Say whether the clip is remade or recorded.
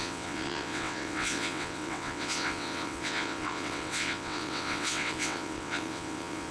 remade